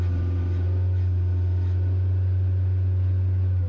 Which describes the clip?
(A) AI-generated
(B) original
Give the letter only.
B